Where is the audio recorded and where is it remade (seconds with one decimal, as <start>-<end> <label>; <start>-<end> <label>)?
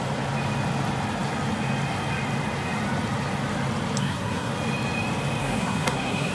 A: 0.0-4.0 recorded; 4.0-4.5 remade; 4.5-5.4 recorded; 5.4-6.3 remade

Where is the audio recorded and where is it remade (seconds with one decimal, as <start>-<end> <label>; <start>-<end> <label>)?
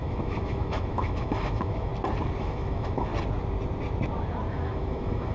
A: 0.0-1.9 remade; 1.9-2.4 recorded; 2.4-3.1 remade; 3.1-4.5 recorded; 4.5-5.3 remade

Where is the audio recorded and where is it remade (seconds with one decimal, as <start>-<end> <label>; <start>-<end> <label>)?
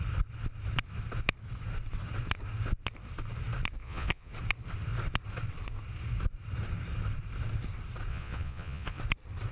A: 0.0-3.8 recorded; 3.8-4.3 remade; 4.3-8.1 recorded; 8.1-9.0 remade; 9.0-9.5 recorded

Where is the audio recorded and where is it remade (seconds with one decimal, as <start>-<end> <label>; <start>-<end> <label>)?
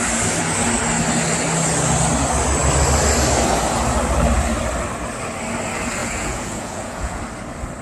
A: 0.0-6.0 recorded; 6.0-7.2 remade; 7.2-7.8 recorded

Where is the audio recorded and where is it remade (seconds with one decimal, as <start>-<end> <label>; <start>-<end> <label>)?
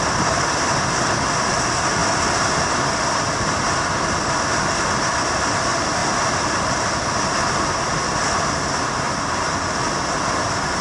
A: 0.0-10.8 recorded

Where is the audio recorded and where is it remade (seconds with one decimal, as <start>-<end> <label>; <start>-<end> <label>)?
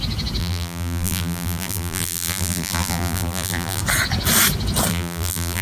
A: 0.0-0.4 recorded; 0.4-3.8 remade; 3.8-4.9 recorded; 4.9-5.6 remade